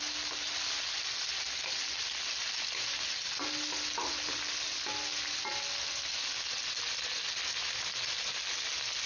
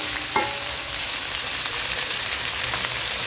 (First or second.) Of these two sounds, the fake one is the second